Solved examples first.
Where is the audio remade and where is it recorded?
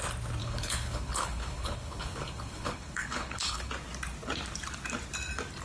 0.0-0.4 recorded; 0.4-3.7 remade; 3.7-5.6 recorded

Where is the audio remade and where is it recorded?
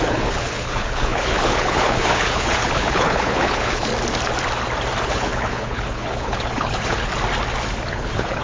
0.0-3.9 remade; 3.9-5.0 recorded; 5.0-7.1 remade; 7.1-7.9 recorded; 7.9-8.4 remade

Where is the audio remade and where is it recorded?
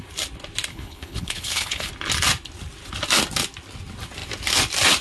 0.0-0.7 recorded; 0.7-1.9 remade; 1.9-5.0 recorded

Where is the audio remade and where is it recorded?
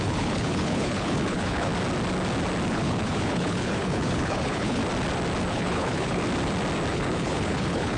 0.0-1.7 remade; 1.7-2.7 recorded; 2.7-4.8 remade; 4.8-5.5 recorded; 5.5-6.2 remade; 6.2-6.9 recorded; 6.9-8.0 remade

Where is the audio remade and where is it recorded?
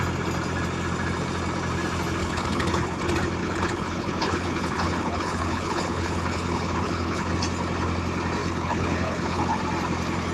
0.0-2.2 recorded; 2.2-3.0 remade; 3.0-3.4 recorded; 3.4-7.3 remade; 7.3-8.4 recorded; 8.4-9.6 remade; 9.6-10.3 recorded